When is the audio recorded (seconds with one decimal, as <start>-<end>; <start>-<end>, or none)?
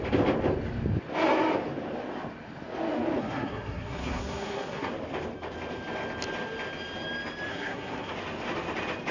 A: 0.0-3.2; 4.9-7.5; 8.1-9.1